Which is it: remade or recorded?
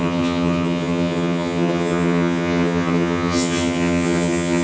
remade